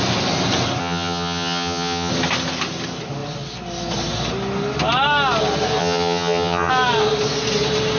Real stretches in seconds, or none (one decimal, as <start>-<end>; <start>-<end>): 0.0-0.8; 2.1-5.8; 6.7-8.0